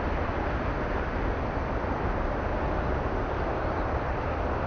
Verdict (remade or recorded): remade